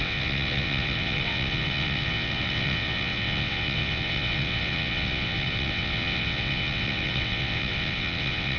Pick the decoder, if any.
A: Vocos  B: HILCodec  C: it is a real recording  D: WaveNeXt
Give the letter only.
D